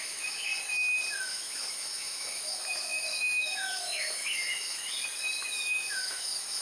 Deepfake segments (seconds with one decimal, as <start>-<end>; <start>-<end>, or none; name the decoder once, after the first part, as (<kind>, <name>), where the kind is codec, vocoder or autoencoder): 0.0-0.5 (autoencoder, DAC-VAE); 1.2-4.9; 5.5-6.6